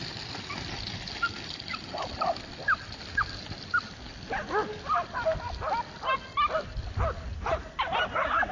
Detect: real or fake real